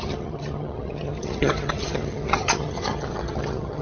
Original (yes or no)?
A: no